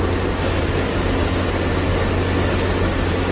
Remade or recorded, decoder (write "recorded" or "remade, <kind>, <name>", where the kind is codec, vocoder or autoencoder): recorded